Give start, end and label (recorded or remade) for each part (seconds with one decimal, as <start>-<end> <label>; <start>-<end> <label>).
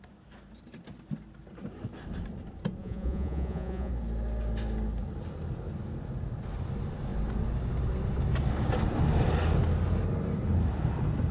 0.0-2.8 recorded; 2.8-3.9 remade; 3.9-11.3 recorded